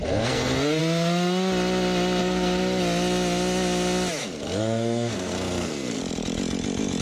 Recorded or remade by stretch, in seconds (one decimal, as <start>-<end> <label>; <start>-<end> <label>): 0.0-0.8 remade; 0.8-2.2 recorded; 2.2-2.8 remade; 2.8-4.2 recorded; 4.2-6.0 remade; 6.0-7.0 recorded